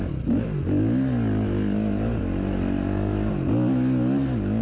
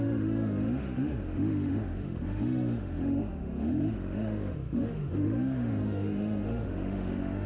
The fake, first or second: second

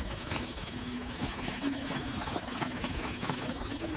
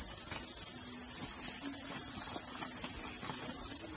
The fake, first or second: first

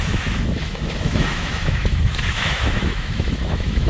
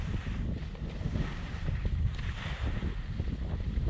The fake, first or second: first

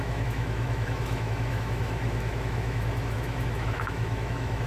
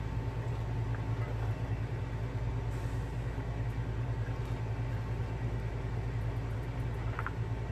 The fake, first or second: first